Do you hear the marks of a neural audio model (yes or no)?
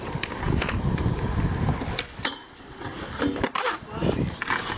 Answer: yes